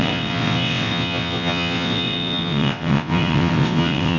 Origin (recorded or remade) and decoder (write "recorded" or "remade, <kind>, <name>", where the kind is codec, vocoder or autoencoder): remade, vocoder, WaveNeXt